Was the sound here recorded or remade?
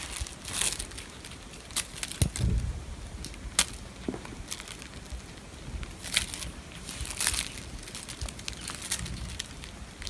recorded